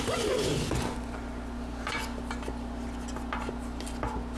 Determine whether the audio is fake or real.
real